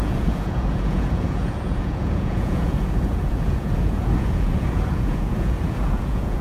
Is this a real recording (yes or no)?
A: no